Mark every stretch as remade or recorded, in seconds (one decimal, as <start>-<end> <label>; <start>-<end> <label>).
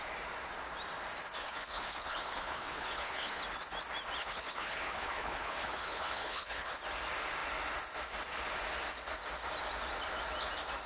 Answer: 0.0-1.4 recorded; 1.4-3.4 remade; 3.4-4.2 recorded; 4.2-6.7 remade; 6.7-10.9 recorded